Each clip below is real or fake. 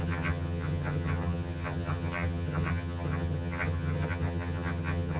fake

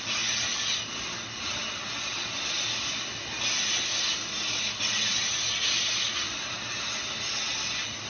real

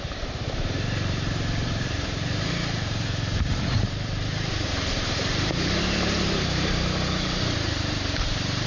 fake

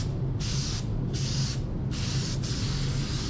real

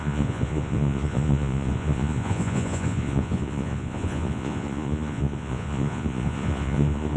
fake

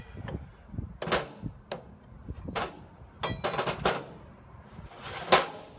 real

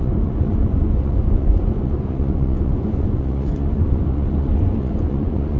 fake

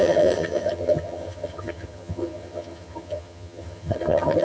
fake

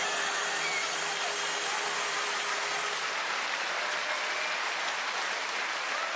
real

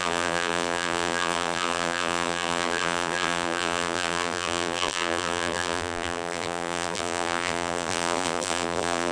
fake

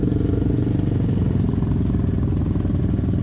real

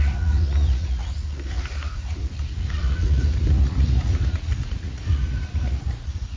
fake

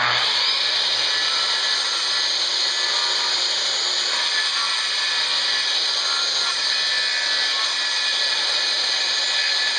real